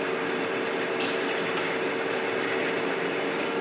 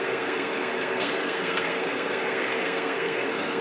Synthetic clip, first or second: second